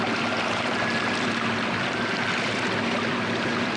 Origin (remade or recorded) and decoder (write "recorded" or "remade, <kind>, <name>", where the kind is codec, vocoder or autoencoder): recorded